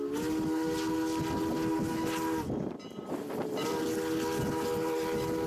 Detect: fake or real real